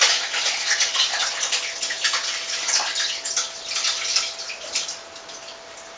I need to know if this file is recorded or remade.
recorded